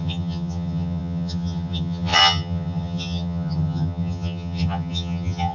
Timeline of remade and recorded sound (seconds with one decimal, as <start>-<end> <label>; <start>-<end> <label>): 0.0-5.5 remade